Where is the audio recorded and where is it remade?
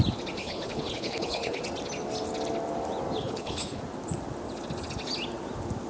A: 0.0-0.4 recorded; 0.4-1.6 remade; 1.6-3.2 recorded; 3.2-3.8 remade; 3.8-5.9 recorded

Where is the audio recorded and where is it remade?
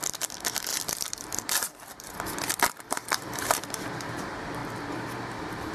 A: 0.0-4.6 remade; 4.6-5.3 recorded; 5.3-5.7 remade